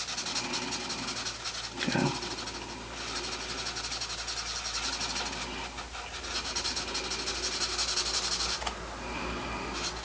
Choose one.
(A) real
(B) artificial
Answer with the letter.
A